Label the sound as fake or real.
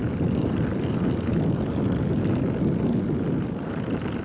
real